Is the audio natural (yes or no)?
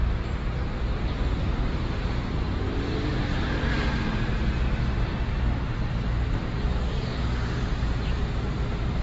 no